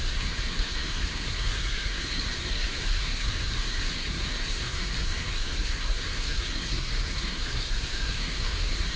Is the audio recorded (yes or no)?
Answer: no